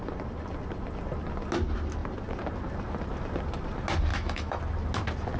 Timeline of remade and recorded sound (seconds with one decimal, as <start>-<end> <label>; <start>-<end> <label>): 0.0-4.1 recorded; 4.1-4.6 remade; 4.6-5.4 recorded